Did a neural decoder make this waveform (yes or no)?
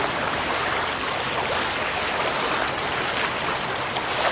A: no